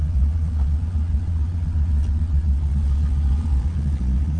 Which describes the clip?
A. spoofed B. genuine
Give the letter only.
A